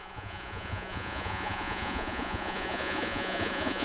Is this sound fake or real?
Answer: fake